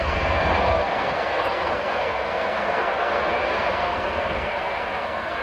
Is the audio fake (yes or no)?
yes